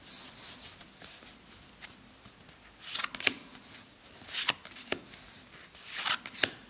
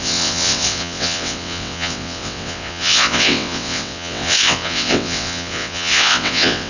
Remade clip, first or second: second